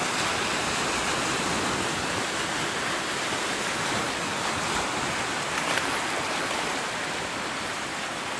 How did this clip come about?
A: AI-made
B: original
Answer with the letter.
B